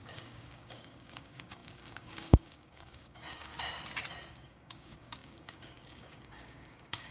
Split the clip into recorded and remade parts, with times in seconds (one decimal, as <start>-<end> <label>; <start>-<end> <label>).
0.0-3.5 remade; 3.5-4.3 recorded; 4.3-7.1 remade